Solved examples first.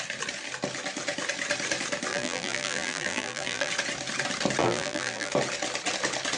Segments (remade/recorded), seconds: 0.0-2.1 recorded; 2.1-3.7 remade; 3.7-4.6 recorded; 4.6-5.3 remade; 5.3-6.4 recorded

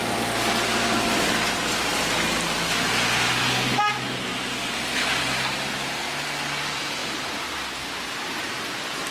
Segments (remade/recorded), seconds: 0.0-9.1 recorded

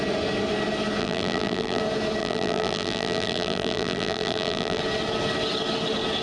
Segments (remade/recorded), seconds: 0.0-1.0 recorded; 1.0-1.8 remade; 1.8-2.2 recorded; 2.2-4.8 remade; 4.8-6.2 recorded